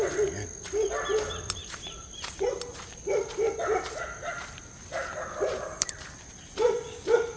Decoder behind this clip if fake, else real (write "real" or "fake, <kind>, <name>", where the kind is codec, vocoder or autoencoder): real